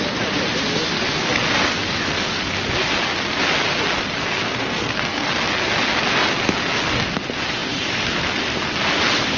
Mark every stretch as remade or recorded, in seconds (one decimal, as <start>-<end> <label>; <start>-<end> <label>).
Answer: 0.0-4.2 recorded; 4.2-5.3 remade; 5.3-9.4 recorded